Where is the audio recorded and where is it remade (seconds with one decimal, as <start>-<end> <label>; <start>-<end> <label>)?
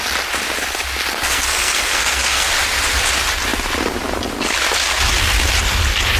0.0-1.1 recorded; 1.1-2.5 remade; 2.5-6.2 recorded